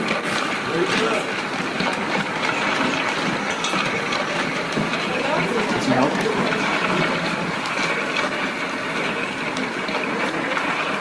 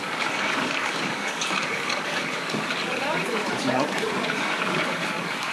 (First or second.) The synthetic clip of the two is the second